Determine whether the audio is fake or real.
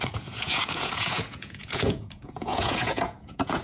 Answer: fake